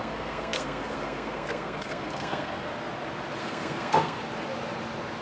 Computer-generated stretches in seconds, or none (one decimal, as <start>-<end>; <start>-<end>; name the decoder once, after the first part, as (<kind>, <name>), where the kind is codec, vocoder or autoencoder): 0.0-2.7 (codec, SNAC); 3.4-4.2